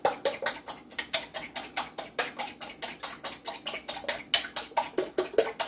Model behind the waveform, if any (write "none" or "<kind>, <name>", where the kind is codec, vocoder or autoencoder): none